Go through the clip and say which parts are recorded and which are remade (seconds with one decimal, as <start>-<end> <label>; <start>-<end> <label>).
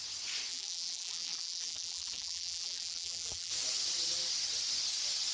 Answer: 0.0-0.5 recorded; 0.5-3.5 remade; 3.5-5.3 recorded